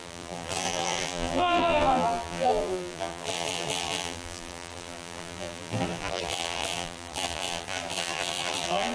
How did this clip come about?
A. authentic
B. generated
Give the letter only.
B